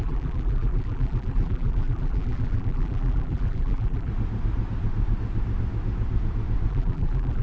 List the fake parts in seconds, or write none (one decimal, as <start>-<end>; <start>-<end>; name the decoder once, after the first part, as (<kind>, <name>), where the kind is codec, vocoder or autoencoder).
0.0-4.1 (vocoder, BigVGAN v2); 6.7-7.4